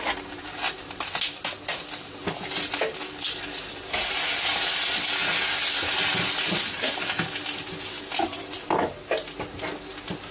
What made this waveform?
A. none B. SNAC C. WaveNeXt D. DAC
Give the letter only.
A